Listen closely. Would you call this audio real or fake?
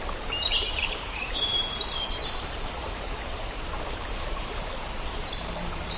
fake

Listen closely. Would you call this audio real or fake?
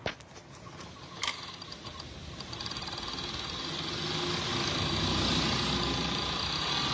real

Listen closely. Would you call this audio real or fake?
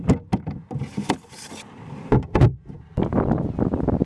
real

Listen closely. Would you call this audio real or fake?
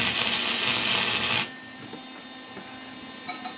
real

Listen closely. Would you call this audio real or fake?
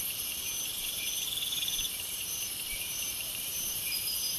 fake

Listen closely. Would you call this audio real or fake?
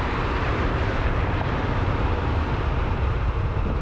fake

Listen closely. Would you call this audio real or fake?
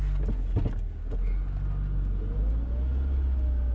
real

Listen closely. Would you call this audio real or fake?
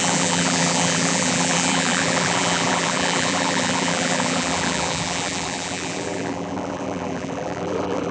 fake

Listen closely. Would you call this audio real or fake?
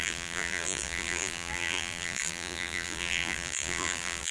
fake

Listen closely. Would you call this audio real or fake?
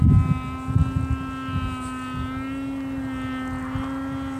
real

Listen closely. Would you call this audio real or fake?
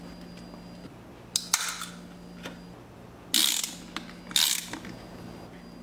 real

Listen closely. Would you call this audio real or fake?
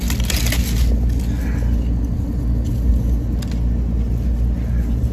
real